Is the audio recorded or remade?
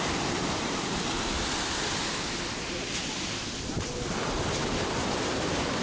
remade